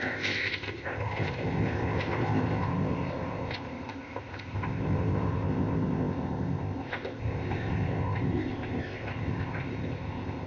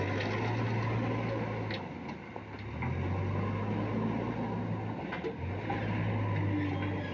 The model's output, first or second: first